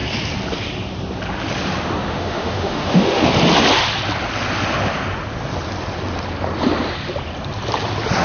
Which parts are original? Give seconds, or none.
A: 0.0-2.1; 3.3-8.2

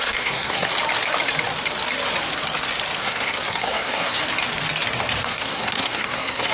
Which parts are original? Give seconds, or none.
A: 0.7-3.0; 4.2-5.2